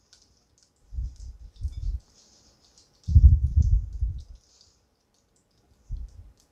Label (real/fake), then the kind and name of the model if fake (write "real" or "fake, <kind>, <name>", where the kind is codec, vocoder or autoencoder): real